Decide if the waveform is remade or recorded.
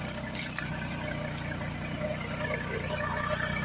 recorded